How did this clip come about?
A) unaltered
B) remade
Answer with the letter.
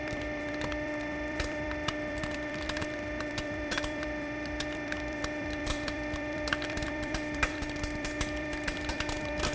B